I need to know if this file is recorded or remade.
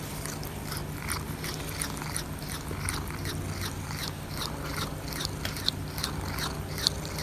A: recorded